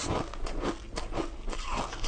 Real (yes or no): yes